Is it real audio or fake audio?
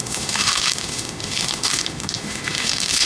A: fake